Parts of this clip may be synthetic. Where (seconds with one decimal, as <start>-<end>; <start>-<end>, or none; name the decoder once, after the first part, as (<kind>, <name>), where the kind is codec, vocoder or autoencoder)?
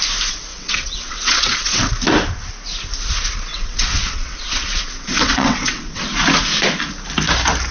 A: 0.5-1.9 (vocoder, WaveNeXt); 3.5-6.0